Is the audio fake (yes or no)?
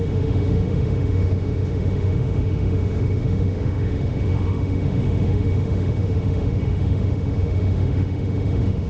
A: yes